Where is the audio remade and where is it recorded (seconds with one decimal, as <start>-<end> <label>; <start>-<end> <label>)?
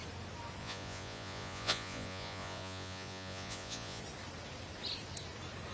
0.0-0.6 recorded; 0.6-4.0 remade; 4.0-5.7 recorded